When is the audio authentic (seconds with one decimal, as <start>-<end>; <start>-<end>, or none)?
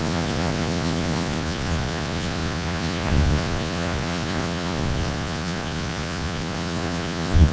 none